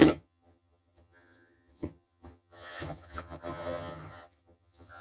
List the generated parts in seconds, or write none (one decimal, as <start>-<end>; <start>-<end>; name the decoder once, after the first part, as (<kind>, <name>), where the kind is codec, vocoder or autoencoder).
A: 0.0-5.0 (vocoder, HiFi-GAN)